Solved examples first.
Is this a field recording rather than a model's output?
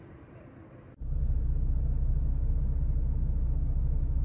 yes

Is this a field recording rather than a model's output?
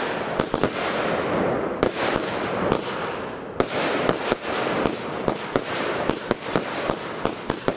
yes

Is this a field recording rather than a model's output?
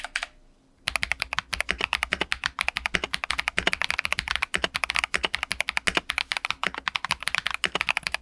yes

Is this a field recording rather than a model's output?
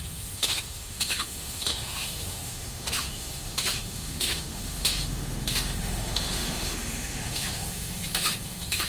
no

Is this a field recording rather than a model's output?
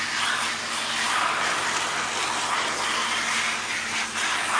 yes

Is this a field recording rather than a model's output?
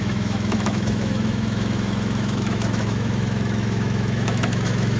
no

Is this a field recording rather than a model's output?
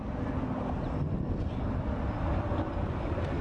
yes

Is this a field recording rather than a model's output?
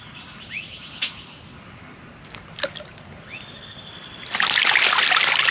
yes